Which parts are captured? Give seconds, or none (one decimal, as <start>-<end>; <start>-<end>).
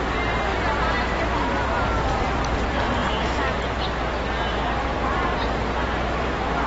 0.0-6.7